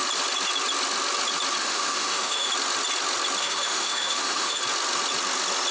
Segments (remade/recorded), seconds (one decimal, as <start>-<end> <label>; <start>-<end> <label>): 0.0-1.6 recorded; 1.6-2.5 remade; 2.5-3.4 recorded; 3.4-4.6 remade; 4.6-5.7 recorded